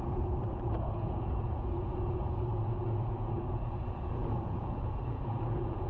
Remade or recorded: remade